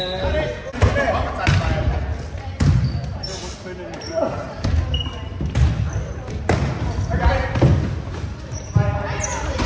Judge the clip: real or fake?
real